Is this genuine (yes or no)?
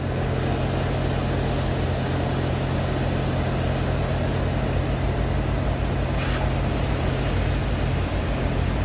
yes